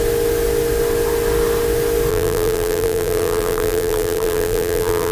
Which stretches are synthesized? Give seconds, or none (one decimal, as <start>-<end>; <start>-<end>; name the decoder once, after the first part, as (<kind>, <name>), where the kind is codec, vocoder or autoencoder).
2.1-5.1 (vocoder, BigVGAN v2)